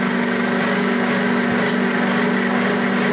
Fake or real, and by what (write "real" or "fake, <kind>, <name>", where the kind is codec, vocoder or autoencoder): real